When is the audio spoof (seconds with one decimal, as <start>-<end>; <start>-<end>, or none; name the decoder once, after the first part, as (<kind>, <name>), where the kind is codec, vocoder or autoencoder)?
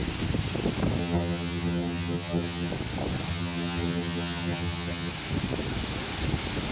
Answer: 1.0-2.7 (vocoder, HiFi-GAN); 3.3-5.1